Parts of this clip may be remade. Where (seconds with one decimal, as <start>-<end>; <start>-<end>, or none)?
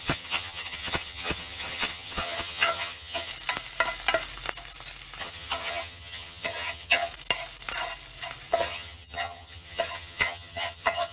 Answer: 0.0-3.3; 5.2-7.1; 8.5-11.1